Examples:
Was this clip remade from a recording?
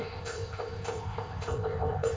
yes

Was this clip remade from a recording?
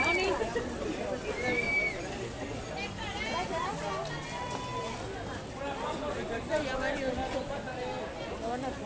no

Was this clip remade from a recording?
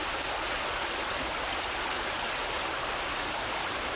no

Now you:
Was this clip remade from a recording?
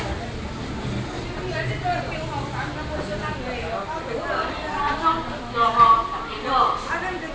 no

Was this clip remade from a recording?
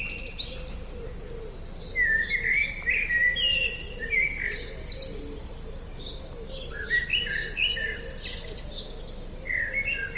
no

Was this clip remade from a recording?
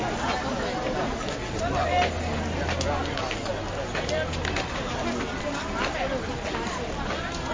no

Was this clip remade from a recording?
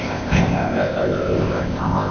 yes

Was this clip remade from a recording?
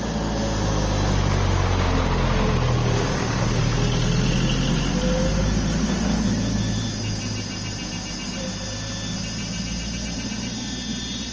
no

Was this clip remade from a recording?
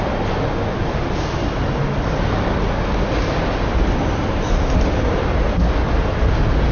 no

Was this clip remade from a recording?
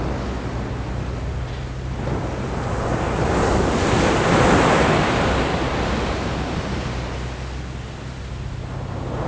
no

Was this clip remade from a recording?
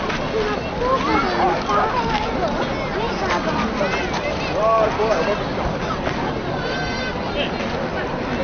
no